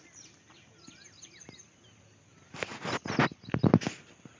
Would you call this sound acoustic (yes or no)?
yes